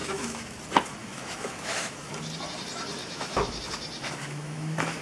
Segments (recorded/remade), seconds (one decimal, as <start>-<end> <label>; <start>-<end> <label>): 0.0-0.6 remade; 0.6-1.0 recorded; 1.0-2.1 remade; 2.1-3.0 recorded; 3.0-3.6 remade; 3.6-4.0 recorded; 4.0-5.0 remade